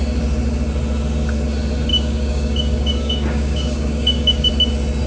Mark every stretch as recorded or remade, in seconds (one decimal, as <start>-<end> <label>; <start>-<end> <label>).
0.0-1.9 recorded; 1.9-4.5 remade; 4.5-5.1 recorded